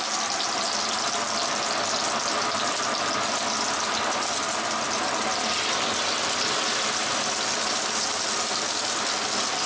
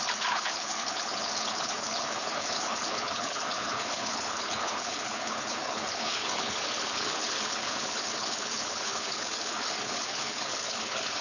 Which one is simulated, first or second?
second